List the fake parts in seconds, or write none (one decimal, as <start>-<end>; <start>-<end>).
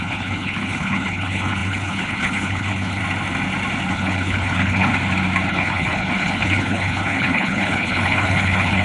0.0-3.0; 3.9-4.9; 5.5-8.8